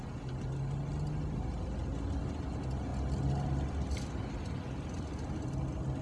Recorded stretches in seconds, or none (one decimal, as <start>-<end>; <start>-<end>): 0.0-6.0